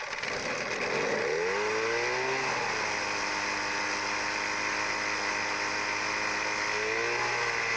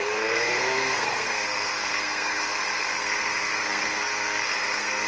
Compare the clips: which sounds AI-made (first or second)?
second